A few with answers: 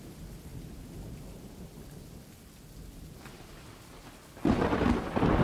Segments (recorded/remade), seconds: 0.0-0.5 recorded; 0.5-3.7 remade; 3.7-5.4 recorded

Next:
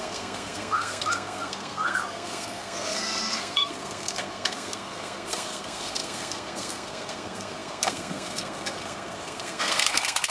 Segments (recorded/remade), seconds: 0.0-10.3 remade

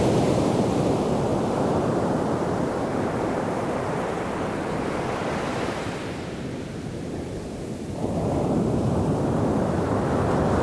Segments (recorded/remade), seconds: 0.0-10.6 recorded